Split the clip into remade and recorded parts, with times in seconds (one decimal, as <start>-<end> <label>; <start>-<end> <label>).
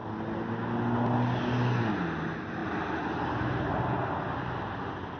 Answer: 0.0-5.2 recorded